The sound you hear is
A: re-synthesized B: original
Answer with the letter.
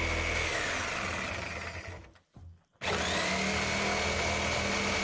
B